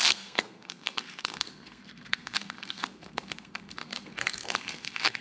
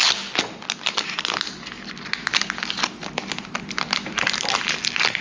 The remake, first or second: first